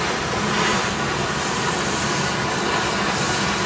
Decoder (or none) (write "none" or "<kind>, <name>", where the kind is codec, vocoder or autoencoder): none